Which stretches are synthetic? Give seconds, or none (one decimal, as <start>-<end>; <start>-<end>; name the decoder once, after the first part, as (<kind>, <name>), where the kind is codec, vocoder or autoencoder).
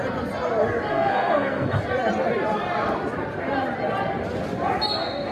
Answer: 0.9-1.8 (codec, SNAC)